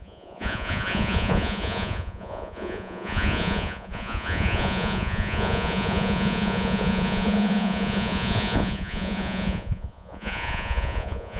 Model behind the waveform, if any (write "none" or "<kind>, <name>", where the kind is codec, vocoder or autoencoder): vocoder, Vocos